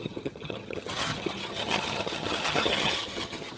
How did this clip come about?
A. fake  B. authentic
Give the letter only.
A